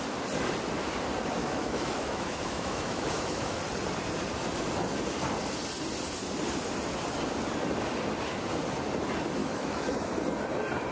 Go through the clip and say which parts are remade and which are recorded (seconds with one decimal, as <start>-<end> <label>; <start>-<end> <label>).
0.0-1.4 recorded; 1.4-3.6 remade; 3.6-9.4 recorded; 9.4-10.1 remade; 10.1-10.9 recorded